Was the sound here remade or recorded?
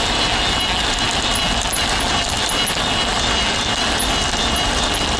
recorded